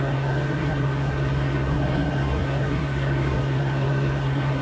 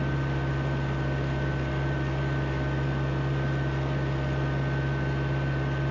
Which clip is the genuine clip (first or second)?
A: second